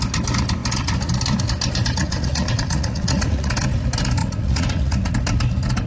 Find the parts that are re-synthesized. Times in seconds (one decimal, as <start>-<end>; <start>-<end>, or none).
2.0-3.5; 4.2-5.1